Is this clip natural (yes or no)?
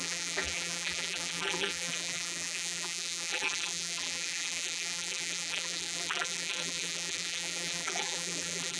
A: no